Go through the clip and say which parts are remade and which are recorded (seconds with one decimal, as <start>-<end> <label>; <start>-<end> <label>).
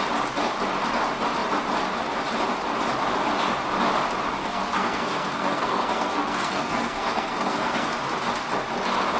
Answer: 0.0-4.4 recorded; 4.4-7.9 remade; 7.9-9.2 recorded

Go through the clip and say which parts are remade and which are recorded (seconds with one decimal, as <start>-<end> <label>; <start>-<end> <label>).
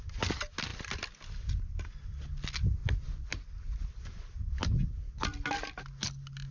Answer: 0.0-6.5 recorded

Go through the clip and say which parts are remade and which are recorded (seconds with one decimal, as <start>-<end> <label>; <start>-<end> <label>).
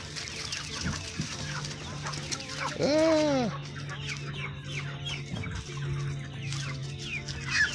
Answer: 0.0-7.7 recorded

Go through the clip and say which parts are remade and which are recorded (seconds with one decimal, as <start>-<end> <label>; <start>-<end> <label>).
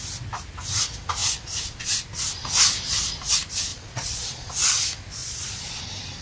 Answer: 0.0-3.7 recorded; 3.7-4.5 remade; 4.5-5.2 recorded; 5.2-5.8 remade; 5.8-6.2 recorded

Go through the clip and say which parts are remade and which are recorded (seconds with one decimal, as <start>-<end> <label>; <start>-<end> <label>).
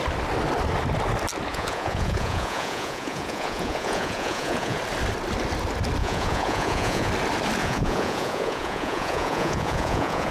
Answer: 0.0-1.5 recorded; 1.5-4.8 remade; 4.8-6.0 recorded; 6.0-7.1 remade; 7.1-7.6 recorded; 7.6-10.3 remade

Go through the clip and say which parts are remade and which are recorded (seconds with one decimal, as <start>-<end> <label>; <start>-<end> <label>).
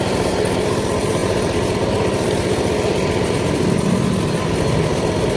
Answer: 0.0-5.4 recorded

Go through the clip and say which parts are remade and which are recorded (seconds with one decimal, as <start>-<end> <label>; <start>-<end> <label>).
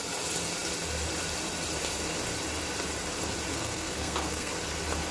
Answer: 0.0-3.5 recorded; 3.5-4.5 remade; 4.5-5.1 recorded